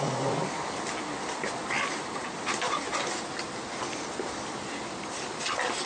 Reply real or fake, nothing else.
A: real